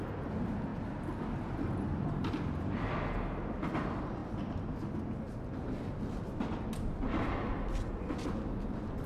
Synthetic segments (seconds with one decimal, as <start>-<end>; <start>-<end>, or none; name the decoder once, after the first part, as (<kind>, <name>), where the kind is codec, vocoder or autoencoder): none